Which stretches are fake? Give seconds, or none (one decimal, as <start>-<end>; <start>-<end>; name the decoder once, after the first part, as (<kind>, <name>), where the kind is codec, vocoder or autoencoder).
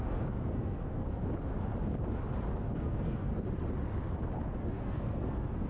0.0-1.2 (codec, SNAC); 2.6-3.3; 4.6-5.7